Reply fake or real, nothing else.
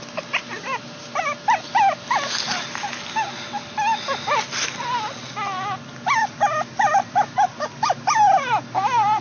real